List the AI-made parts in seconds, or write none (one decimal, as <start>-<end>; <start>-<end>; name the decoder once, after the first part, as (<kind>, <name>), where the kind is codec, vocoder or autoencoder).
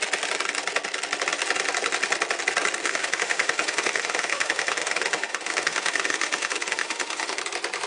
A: 2.8-7.4 (autoencoder, DAC-VAE)